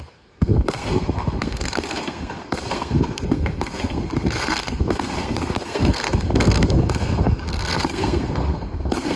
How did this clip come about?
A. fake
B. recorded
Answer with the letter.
A